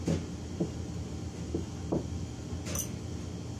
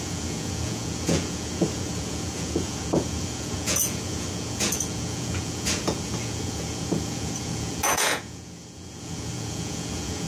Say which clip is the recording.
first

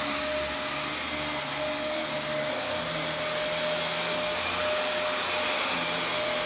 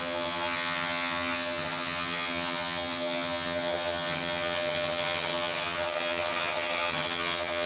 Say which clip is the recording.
first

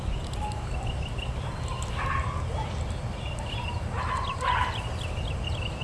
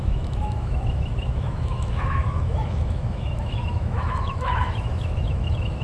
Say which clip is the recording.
first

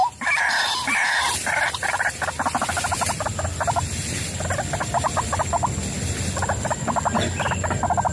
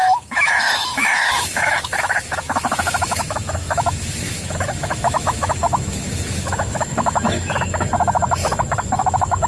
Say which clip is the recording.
first